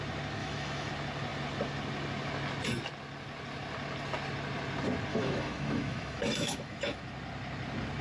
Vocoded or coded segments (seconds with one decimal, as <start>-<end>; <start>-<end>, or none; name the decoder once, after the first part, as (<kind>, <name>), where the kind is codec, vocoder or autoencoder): 0.4-0.9 (autoencoder, DAC-VAE); 5.1-7.0